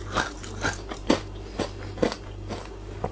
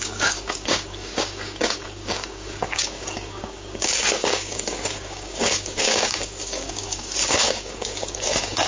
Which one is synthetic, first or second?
second